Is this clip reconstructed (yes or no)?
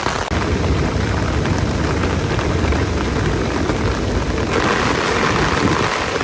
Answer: no